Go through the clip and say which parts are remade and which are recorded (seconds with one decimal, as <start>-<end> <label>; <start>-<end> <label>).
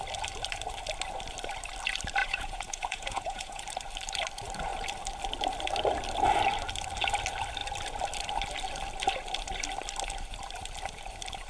0.0-2.2 recorded; 2.2-3.6 remade; 3.6-11.5 recorded